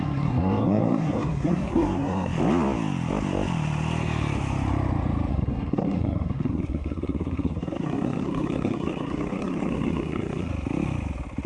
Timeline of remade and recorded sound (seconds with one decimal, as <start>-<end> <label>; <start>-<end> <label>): 0.0-2.3 remade; 2.3-5.3 recorded; 5.3-10.5 remade; 10.5-11.5 recorded